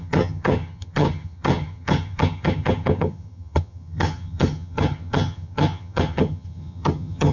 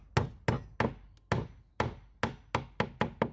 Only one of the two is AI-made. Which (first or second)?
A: first